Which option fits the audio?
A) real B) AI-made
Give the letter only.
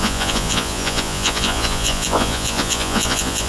B